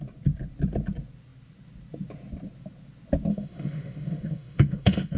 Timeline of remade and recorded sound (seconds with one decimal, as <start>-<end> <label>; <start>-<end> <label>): 0.0-3.3 recorded; 3.3-5.2 remade